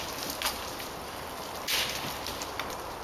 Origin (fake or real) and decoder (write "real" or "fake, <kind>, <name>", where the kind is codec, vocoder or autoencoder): real